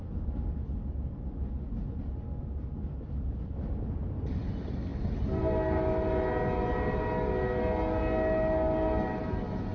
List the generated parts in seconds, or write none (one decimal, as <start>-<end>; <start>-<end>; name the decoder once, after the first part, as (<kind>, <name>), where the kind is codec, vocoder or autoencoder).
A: none